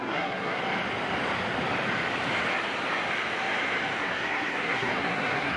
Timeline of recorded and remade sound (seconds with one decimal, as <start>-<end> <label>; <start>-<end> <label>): 0.0-0.6 remade; 0.6-4.0 recorded; 4.0-5.6 remade